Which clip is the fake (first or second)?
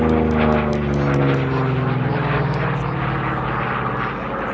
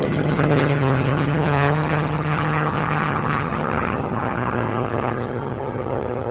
second